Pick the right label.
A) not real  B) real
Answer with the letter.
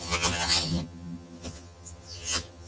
A